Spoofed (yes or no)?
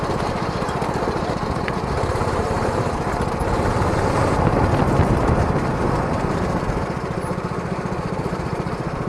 yes